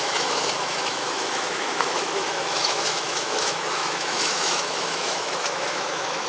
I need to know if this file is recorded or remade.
remade